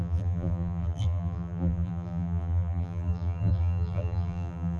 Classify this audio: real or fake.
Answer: fake